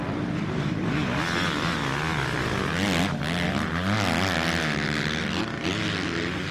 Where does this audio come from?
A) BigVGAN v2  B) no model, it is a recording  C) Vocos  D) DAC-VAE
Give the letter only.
B